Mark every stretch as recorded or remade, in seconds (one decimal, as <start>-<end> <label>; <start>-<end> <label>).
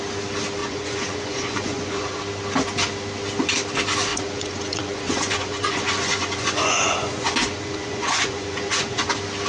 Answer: 0.0-0.6 recorded; 0.6-2.2 remade; 2.2-4.1 recorded; 4.1-9.1 remade; 9.1-9.5 recorded